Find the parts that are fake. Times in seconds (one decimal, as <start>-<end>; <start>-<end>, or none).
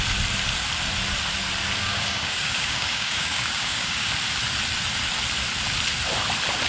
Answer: 1.9-4.1